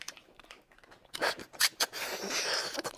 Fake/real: fake